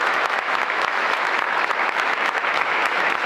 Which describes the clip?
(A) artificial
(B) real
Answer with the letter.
A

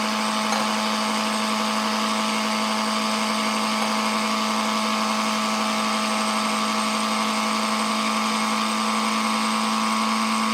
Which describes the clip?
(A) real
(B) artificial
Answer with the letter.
A